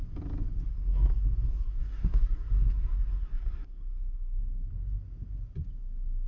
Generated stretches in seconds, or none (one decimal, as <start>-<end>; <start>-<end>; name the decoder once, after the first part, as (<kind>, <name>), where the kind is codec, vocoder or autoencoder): 0.7-4.4 (codec, SNAC)